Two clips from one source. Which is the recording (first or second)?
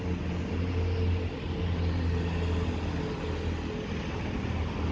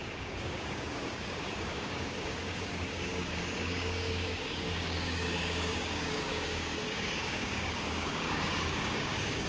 first